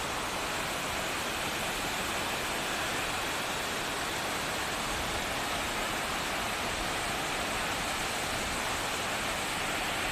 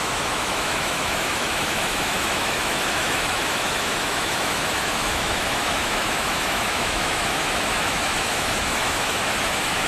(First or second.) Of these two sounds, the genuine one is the first